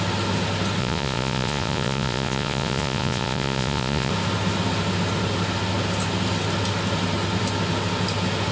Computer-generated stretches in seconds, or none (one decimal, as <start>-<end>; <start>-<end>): 0.8-4.1